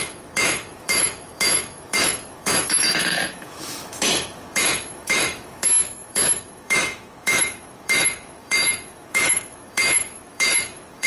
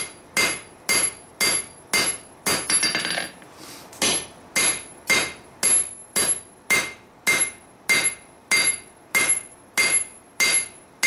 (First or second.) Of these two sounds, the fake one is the first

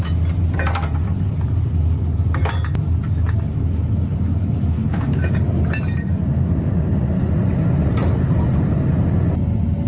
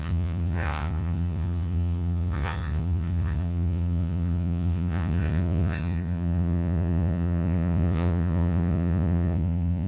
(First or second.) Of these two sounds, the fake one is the second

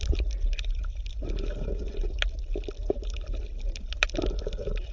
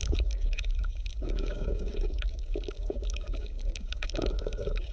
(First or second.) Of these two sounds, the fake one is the second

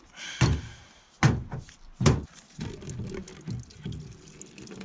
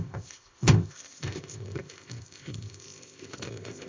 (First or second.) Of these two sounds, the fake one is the second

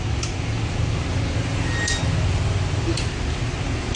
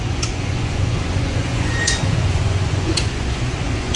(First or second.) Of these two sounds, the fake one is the second